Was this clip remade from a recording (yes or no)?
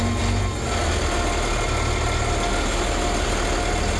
no